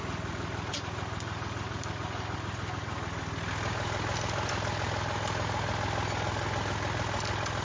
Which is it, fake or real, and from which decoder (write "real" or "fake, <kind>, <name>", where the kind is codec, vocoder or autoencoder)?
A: real